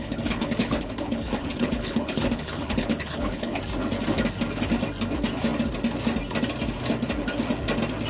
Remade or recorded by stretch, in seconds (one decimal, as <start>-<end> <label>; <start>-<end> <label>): 0.0-3.6 remade; 3.6-8.1 recorded